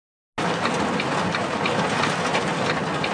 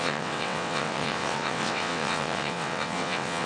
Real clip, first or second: first